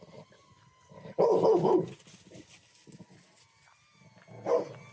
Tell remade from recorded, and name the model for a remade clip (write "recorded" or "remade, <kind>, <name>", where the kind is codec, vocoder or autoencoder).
recorded